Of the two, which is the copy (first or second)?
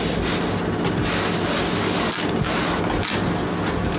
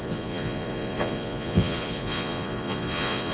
second